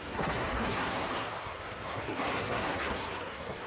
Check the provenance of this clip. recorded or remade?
remade